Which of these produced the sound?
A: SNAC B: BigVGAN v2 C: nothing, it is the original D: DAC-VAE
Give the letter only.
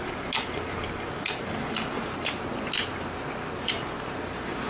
C